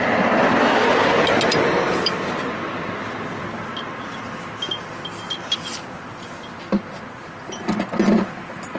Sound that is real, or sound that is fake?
real